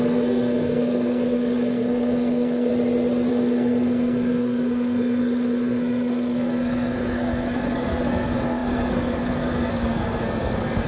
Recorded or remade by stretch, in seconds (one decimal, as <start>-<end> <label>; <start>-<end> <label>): 0.0-2.7 remade; 2.7-3.3 recorded; 3.3-10.9 remade